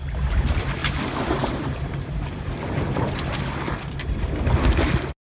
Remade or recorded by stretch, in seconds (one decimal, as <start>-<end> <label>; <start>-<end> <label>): 0.0-0.8 recorded; 0.8-3.9 remade; 3.9-5.3 recorded